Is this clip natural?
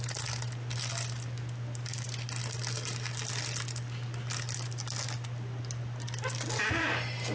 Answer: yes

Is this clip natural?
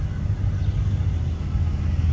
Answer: yes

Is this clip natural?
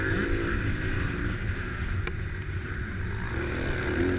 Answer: yes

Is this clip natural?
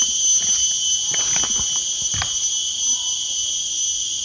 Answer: yes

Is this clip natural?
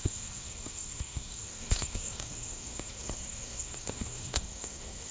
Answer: no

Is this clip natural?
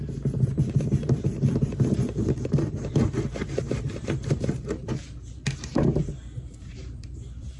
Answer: no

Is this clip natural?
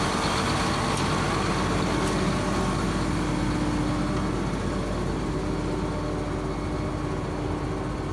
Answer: yes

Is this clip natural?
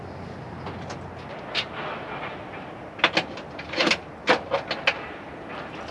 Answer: yes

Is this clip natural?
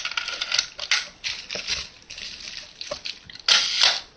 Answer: yes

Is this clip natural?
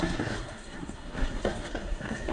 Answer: no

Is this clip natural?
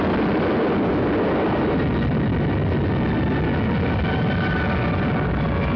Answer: yes